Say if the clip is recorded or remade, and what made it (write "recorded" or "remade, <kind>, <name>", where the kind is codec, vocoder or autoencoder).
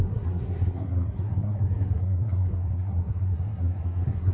remade, codec, SNAC